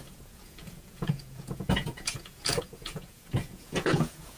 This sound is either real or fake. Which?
fake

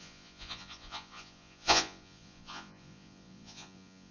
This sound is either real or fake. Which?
fake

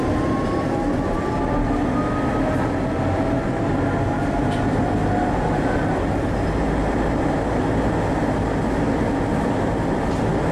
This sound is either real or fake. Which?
real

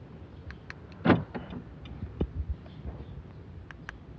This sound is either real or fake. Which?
real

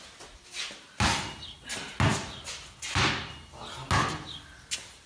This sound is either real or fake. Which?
real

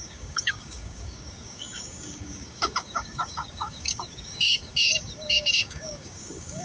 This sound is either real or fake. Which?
fake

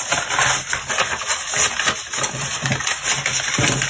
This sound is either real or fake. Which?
real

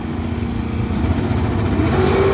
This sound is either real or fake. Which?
real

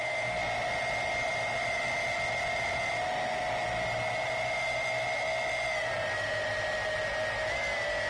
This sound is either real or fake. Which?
real